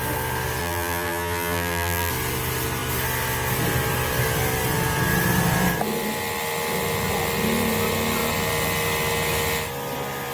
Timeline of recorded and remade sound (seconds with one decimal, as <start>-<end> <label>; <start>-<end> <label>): 0.0-0.6 recorded; 0.6-2.1 remade; 2.1-10.3 recorded